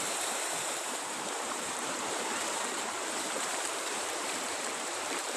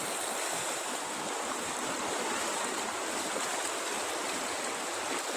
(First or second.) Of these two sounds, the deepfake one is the first